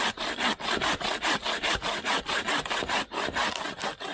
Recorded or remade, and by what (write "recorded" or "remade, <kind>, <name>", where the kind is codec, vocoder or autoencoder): recorded